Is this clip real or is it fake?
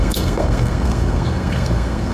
fake